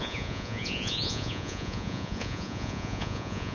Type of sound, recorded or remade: remade